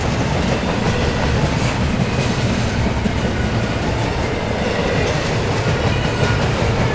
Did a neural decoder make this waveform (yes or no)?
no